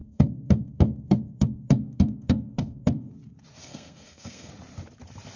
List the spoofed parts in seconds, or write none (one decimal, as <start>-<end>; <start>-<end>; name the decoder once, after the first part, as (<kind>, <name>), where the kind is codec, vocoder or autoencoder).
0.0-3.1 (codec, SNAC); 3.6-4.5